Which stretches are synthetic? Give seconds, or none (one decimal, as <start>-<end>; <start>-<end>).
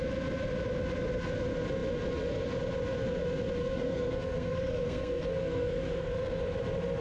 3.6-6.4